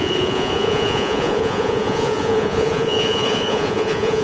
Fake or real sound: fake